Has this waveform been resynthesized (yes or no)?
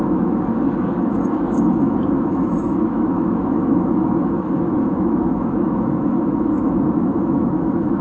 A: yes